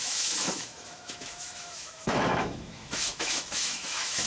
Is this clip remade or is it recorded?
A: remade